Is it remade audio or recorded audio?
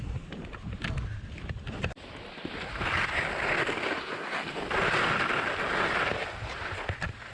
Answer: recorded